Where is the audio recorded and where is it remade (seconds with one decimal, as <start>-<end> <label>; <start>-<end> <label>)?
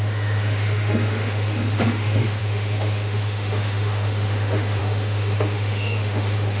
0.0-6.6 remade